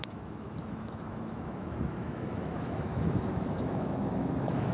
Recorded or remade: remade